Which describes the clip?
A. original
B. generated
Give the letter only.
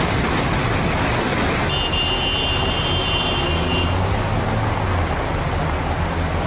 A